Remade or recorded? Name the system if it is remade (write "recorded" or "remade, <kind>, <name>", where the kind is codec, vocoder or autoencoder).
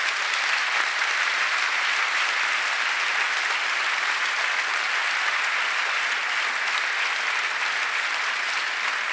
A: recorded